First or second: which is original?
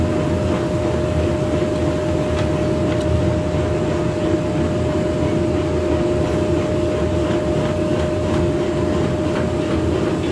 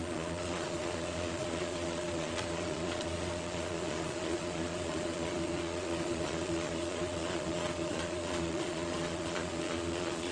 first